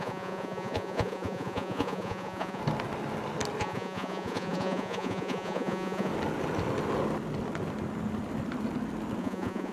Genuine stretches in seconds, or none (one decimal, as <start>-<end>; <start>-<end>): 2.6-3.6; 6.1-9.2